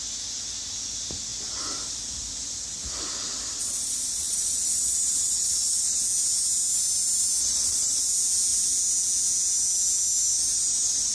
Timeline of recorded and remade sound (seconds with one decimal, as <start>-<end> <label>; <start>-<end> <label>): 0.0-3.6 recorded; 3.6-6.0 remade; 6.0-7.4 recorded; 7.4-8.0 remade; 8.0-11.1 recorded